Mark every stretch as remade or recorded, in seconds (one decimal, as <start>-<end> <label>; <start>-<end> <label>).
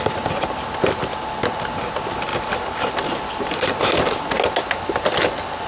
0.0-5.7 recorded